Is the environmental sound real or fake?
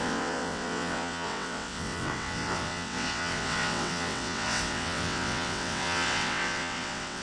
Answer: fake